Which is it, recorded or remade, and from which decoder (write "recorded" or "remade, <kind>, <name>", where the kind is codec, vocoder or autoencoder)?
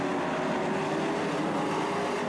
recorded